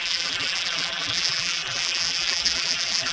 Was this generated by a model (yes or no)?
yes